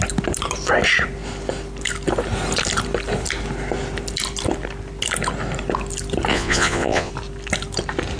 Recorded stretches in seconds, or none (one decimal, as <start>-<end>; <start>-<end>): 0.0-6.3; 7.1-8.2